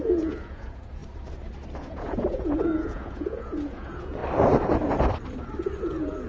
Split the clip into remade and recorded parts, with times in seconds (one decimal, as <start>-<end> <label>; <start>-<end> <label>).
0.0-1.0 remade; 1.0-1.8 recorded; 1.8-4.2 remade; 4.2-5.8 recorded; 5.8-6.3 remade